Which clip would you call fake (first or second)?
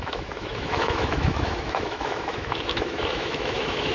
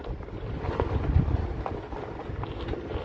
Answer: first